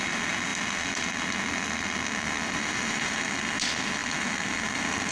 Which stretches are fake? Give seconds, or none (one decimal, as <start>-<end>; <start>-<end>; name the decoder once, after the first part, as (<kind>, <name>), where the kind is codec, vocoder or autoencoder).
none